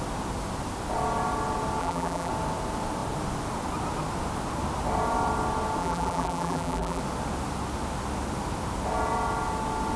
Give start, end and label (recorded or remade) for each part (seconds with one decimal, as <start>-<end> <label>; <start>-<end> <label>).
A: 0.0-1.8 recorded; 1.8-2.3 remade; 2.3-5.8 recorded; 5.8-7.0 remade; 7.0-10.0 recorded